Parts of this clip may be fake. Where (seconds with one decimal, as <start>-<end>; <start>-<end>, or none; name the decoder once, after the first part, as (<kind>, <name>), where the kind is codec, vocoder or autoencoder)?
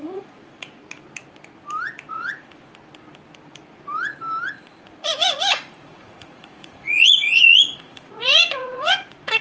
0.0-0.8 (vocoder, Vocos); 2.1-2.7; 4.5-9.4